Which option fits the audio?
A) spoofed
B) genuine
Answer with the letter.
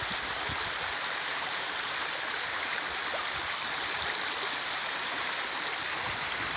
B